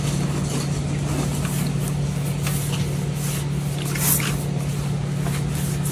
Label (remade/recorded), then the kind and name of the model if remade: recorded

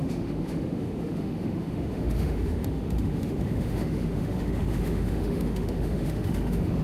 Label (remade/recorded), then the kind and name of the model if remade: remade, autoencoder, DAC-VAE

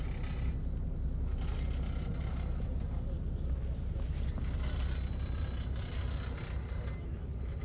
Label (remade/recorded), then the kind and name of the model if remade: recorded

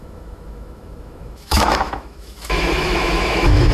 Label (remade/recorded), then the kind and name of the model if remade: remade, autoencoder, DAC-VAE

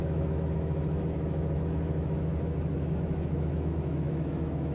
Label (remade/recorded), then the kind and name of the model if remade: remade, autoencoder, DAC-VAE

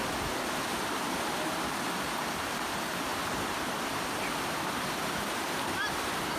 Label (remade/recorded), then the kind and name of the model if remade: recorded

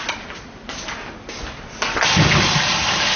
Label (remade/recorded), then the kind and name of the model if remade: recorded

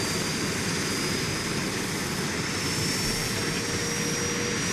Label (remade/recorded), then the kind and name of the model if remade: recorded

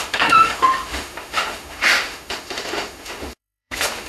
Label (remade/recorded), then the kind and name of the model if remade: remade, autoencoder, DAC-VAE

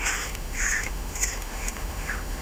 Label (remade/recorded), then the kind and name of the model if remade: remade, autoencoder, DAC-VAE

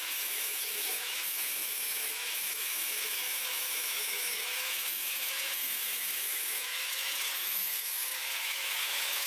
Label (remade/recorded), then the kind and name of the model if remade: remade, autoencoder, DAC-VAE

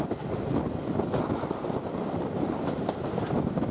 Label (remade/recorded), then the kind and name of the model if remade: recorded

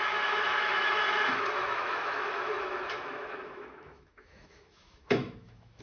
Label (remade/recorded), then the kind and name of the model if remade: remade, autoencoder, DAC-VAE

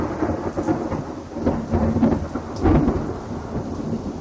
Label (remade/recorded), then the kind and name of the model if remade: recorded